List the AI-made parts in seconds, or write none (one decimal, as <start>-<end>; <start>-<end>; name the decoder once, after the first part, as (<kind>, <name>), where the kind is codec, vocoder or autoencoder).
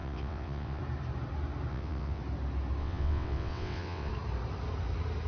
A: 0.0-0.8 (vocoder, WaveNeXt); 1.7-2.2; 2.8-4.1